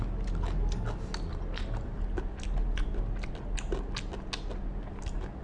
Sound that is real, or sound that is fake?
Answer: real